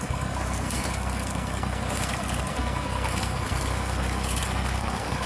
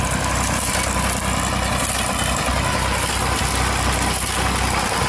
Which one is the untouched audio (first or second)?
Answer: second